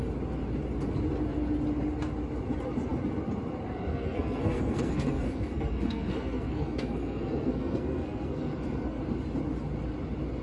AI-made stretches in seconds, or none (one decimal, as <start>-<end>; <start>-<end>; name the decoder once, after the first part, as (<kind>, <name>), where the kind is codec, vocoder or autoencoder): 3.9-9.0 (codec, SNAC)